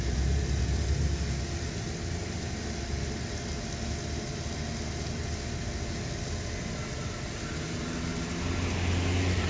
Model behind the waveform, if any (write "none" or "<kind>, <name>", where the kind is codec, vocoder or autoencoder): none